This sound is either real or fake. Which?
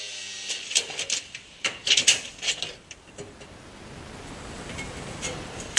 real